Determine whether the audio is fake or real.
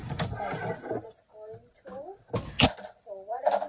real